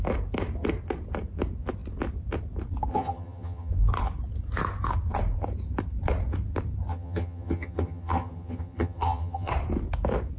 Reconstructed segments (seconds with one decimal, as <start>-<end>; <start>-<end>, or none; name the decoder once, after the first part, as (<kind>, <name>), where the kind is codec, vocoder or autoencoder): 2.9-3.7 (vocoder, HiFi-GAN); 6.9-9.5